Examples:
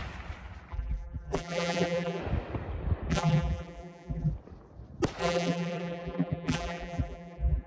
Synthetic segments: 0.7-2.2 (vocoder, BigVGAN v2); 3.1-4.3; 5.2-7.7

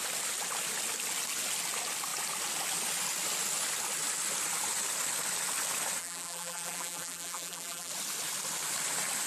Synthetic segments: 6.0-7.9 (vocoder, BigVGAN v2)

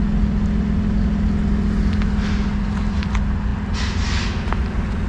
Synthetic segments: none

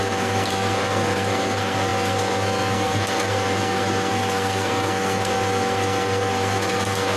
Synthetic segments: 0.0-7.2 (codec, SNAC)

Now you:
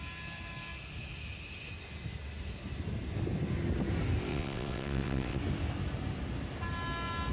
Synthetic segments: 4.3-5.4 (vocoder, WaveNeXt)